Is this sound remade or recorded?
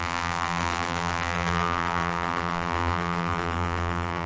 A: remade